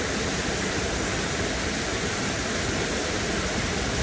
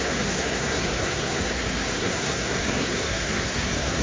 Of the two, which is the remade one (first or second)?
second